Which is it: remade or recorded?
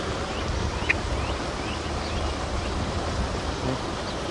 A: recorded